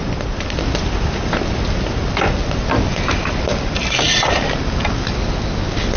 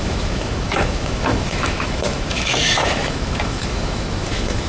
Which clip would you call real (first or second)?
first